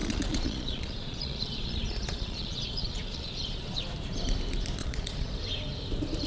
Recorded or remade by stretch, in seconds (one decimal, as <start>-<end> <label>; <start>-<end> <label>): 0.0-3.8 remade; 3.8-4.8 recorded; 4.8-5.3 remade; 5.3-6.3 recorded